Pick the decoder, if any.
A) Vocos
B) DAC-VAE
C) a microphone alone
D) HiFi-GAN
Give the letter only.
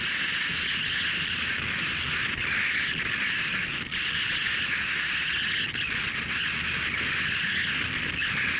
C